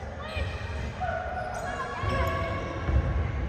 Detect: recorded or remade recorded